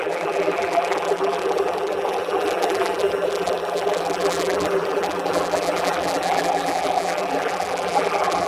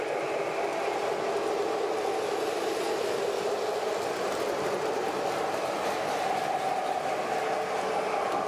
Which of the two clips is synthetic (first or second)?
first